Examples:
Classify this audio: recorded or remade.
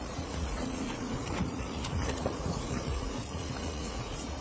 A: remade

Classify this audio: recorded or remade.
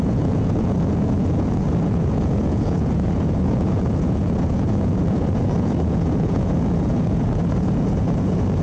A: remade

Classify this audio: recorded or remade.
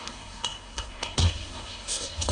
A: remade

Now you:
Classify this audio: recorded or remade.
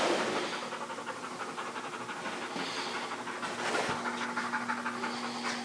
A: recorded